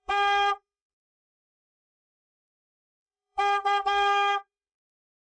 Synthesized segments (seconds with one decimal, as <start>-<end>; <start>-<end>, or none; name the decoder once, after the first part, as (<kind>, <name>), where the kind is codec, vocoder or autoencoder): 0.0-5.4 (codec, SNAC)